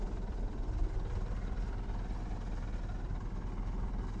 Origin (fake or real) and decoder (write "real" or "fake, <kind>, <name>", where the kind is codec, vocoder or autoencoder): real